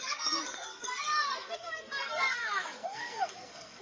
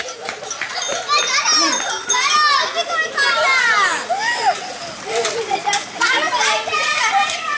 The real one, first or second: second